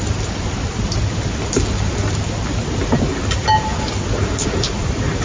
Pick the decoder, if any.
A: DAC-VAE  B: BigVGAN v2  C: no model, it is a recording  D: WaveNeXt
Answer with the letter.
C